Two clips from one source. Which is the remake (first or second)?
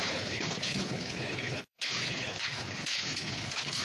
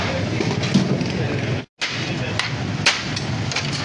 first